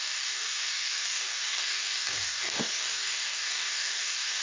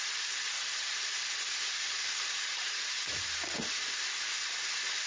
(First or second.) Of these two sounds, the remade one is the first